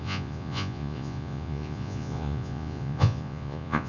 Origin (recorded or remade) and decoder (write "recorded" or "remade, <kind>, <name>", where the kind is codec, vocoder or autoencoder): remade, vocoder, Vocos